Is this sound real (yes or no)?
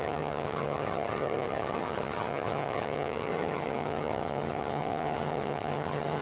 no